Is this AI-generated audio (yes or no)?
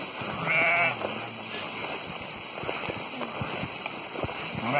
no